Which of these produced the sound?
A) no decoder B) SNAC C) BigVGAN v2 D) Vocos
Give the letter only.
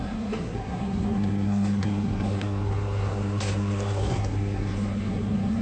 B